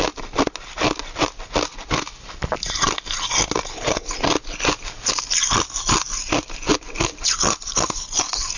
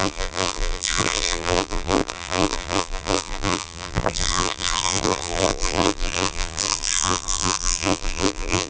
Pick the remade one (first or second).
second